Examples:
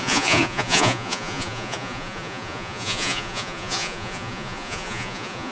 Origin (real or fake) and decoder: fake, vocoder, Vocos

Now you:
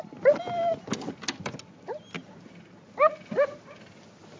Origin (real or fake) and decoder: real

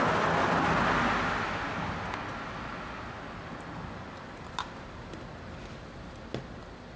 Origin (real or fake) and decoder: real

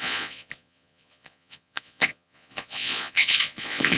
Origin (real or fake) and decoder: fake, vocoder, Vocos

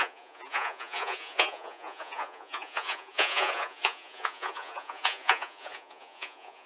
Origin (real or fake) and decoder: fake, vocoder, Vocos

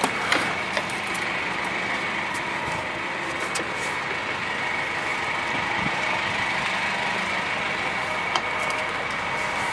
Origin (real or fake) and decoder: real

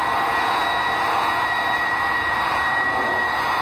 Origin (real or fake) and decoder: fake, vocoder, Vocos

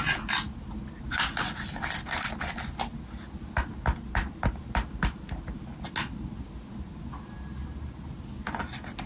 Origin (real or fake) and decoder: real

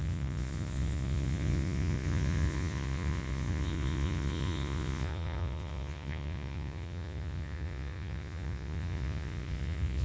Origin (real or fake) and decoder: fake, vocoder, Vocos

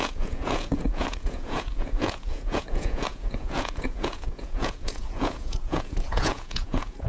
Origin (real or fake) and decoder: fake, vocoder, Vocos